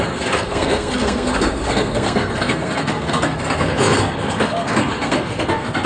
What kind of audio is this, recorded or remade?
remade